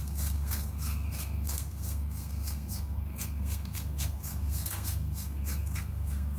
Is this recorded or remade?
remade